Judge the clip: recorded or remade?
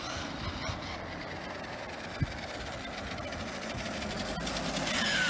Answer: recorded